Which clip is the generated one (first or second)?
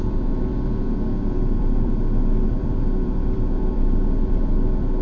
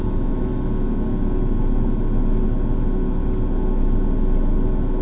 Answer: first